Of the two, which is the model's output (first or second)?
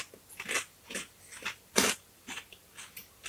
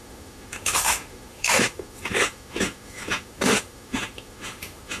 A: second